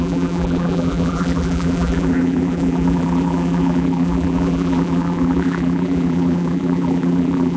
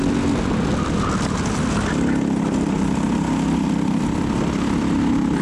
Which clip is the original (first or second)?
second